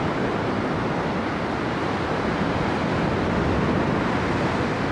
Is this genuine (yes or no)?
yes